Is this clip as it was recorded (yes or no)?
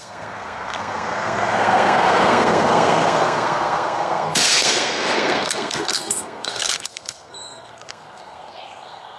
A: no